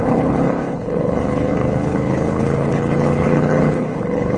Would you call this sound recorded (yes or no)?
no